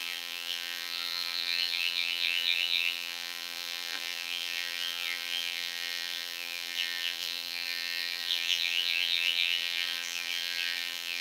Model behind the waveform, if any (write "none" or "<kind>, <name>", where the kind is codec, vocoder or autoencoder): vocoder, BigVGAN v2